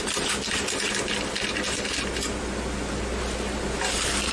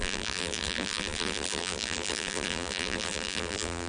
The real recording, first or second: first